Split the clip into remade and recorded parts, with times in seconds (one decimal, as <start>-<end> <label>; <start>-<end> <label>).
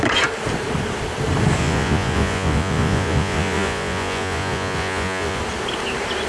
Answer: 0.0-1.6 recorded; 1.6-5.4 remade; 5.4-6.3 recorded